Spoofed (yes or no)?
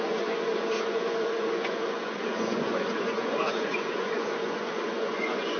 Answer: yes